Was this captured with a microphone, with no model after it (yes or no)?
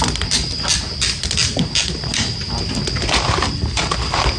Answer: yes